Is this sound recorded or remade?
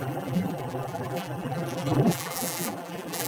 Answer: remade